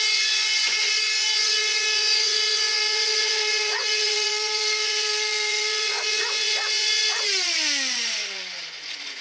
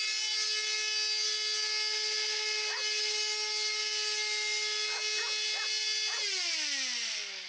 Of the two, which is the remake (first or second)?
first